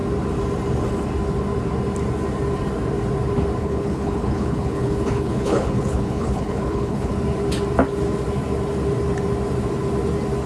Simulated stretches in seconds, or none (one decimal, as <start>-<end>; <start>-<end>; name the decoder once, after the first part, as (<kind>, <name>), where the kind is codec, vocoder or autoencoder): 3.6-7.1 (codec, HILCodec)